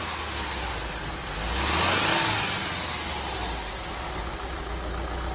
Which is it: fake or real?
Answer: real